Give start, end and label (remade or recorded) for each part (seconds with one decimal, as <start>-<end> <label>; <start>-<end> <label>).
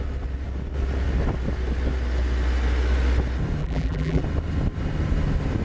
0.0-3.6 recorded; 3.6-4.2 remade; 4.2-5.6 recorded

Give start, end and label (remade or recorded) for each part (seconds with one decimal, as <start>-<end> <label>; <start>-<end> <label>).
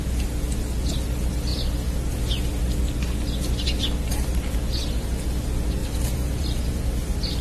0.0-5.8 recorded; 5.8-6.6 remade; 6.6-7.4 recorded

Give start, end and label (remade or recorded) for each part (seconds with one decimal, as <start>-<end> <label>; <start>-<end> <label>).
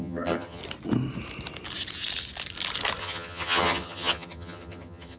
0.0-0.6 remade; 0.6-3.0 recorded; 3.0-5.2 remade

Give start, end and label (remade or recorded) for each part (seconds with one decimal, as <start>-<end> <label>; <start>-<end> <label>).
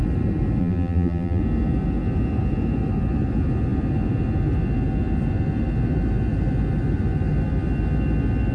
0.0-0.6 recorded; 0.6-1.4 remade; 1.4-8.5 recorded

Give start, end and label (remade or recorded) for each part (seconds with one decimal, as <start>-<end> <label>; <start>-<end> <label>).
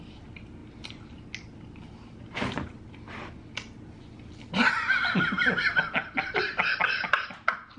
0.0-7.8 recorded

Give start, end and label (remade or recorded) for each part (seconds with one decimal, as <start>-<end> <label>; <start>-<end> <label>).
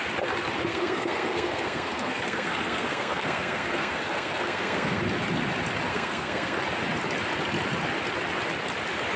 0.0-0.7 recorded; 0.7-5.0 remade; 5.0-5.9 recorded; 5.9-6.6 remade; 6.6-9.2 recorded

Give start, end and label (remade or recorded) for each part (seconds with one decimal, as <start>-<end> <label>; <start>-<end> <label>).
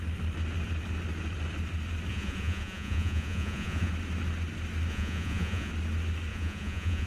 0.0-2.1 recorded; 2.1-3.9 remade; 3.9-4.9 recorded; 4.9-5.7 remade; 5.7-6.3 recorded; 6.3-7.1 remade